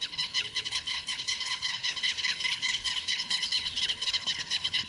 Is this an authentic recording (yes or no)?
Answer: no